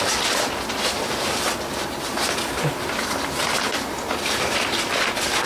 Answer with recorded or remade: recorded